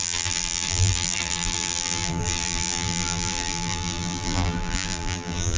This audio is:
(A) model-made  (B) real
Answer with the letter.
A